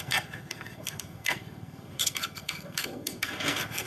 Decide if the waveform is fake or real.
fake